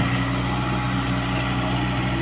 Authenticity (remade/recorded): recorded